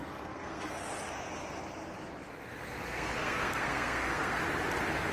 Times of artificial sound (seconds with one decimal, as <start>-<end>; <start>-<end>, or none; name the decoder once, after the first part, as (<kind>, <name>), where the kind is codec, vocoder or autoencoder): 0.0-0.7 (codec, SNAC); 2.9-4.4